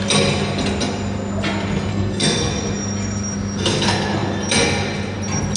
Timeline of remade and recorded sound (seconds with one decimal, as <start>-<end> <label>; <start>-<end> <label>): 0.0-1.9 recorded; 1.9-2.5 remade; 2.5-5.6 recorded